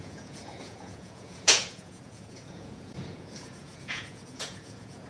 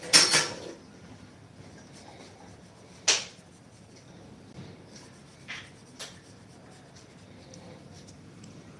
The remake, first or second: first